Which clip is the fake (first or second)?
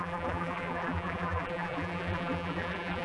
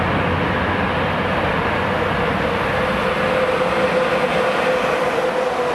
first